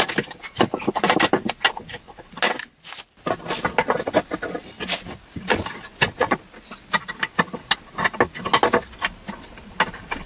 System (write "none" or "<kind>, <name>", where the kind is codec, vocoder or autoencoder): none